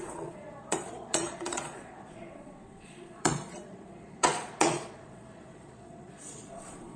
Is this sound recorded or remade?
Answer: remade